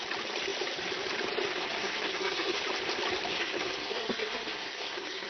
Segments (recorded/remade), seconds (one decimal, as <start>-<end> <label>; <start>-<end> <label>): 0.0-1.5 recorded; 1.5-2.6 remade; 2.6-3.3 recorded; 3.3-5.3 remade